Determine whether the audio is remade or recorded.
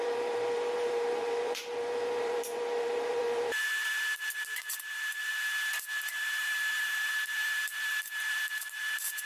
remade